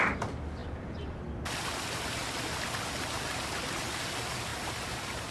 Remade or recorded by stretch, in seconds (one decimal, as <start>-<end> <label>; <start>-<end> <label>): 0.0-0.6 recorded; 0.6-1.2 remade; 1.2-4.5 recorded; 4.5-5.3 remade